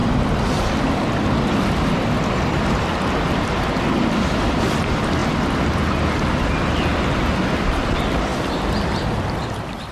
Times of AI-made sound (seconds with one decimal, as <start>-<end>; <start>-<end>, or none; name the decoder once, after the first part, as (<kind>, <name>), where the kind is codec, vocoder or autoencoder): none